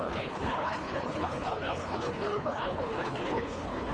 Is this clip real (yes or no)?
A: no